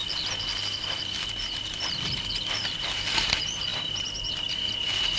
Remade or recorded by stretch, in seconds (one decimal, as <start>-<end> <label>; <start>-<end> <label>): 0.0-5.2 recorded